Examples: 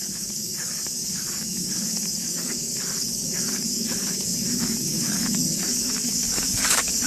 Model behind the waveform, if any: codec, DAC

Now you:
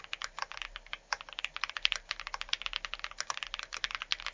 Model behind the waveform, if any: none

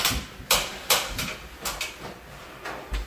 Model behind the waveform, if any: none